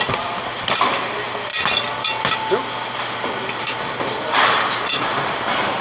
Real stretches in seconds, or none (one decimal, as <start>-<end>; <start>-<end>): 1.5-3.6